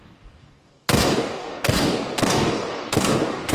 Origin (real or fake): fake